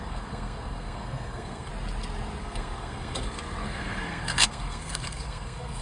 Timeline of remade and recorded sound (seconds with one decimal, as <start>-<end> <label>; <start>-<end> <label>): 0.0-1.7 remade; 1.7-2.4 recorded; 2.4-5.8 remade